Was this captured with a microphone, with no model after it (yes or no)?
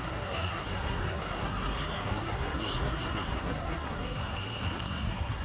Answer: no